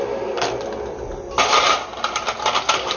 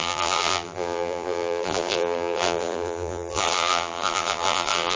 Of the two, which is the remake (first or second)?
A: second